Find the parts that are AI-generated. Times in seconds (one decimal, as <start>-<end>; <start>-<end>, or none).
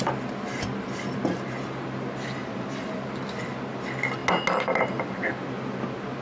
2.4-3.5